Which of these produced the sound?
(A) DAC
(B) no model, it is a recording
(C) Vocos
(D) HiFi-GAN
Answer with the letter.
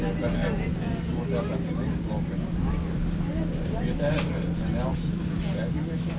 B